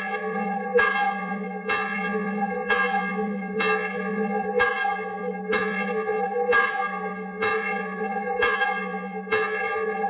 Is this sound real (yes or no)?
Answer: no